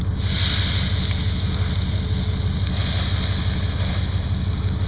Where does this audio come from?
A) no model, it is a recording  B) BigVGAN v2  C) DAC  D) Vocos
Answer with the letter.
A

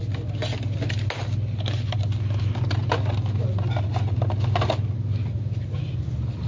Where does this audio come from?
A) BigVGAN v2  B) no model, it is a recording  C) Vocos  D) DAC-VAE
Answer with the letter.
B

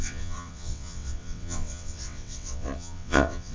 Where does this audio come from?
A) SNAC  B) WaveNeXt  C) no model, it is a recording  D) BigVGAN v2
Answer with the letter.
B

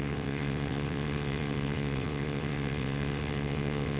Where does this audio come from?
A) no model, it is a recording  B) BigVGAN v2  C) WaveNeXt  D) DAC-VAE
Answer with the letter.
C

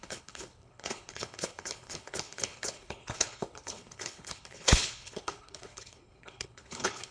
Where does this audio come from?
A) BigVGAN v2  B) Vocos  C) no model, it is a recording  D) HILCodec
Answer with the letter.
D